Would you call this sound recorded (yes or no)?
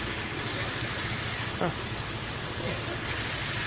yes